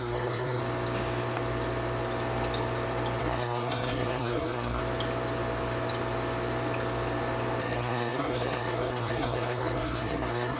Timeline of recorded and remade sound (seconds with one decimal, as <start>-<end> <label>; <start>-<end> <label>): 0.0-0.6 remade; 0.6-3.2 recorded; 3.2-4.8 remade; 4.8-7.6 recorded; 7.6-10.6 remade